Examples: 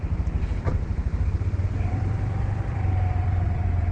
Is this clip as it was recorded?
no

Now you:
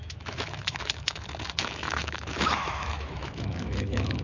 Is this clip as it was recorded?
no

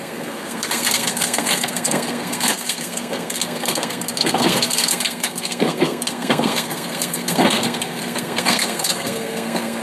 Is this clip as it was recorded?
no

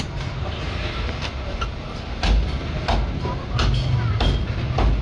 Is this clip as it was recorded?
yes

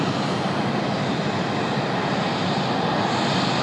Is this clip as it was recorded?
yes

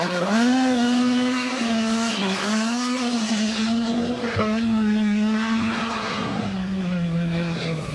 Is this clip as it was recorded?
no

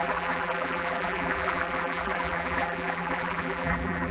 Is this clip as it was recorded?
no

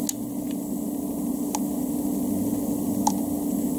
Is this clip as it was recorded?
yes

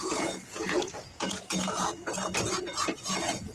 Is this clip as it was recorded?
no